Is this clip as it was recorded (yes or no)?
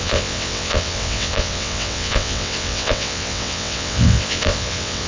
no